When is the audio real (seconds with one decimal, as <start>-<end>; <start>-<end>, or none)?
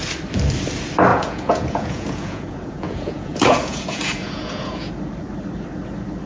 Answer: 0.0-1.1; 4.9-6.3